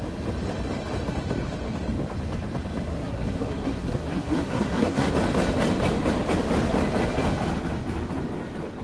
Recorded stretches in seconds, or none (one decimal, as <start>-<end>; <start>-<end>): 0.0-2.9; 5.1-8.8